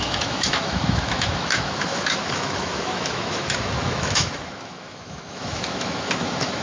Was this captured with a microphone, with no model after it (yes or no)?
no